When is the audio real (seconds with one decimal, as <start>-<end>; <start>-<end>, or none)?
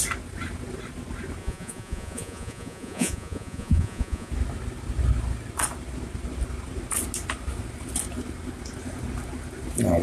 0.0-1.4; 4.3-10.0